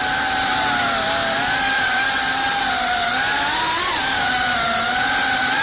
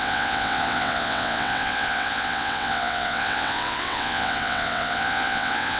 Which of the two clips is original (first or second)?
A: first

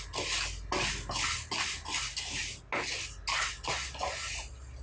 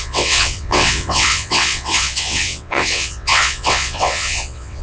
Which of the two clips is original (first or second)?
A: first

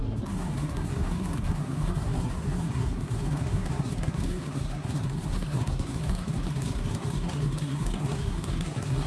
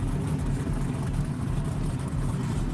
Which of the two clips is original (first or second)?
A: second